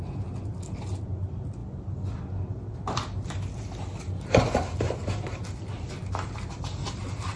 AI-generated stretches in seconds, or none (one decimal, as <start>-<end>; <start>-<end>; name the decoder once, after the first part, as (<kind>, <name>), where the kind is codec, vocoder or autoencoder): none